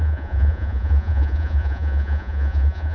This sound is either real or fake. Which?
fake